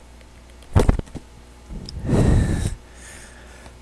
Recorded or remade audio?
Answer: recorded